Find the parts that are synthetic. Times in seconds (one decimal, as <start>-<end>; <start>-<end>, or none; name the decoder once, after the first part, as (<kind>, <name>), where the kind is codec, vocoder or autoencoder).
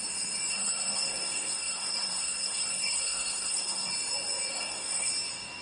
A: 0.5-3.9 (codec, SNAC); 4.5-5.1